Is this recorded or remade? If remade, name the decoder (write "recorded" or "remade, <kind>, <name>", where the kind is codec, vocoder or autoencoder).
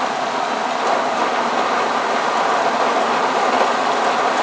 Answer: recorded